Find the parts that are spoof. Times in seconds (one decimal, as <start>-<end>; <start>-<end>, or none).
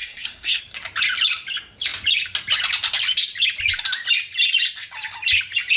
0.0-0.6